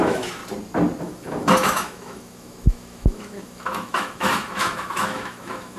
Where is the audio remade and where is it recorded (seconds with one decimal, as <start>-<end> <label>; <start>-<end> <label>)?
0.0-0.4 remade; 0.4-1.0 recorded; 1.0-5.8 remade